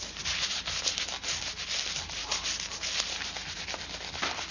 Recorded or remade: recorded